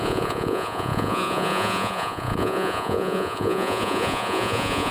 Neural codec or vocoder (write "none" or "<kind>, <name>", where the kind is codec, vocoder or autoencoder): vocoder, Vocos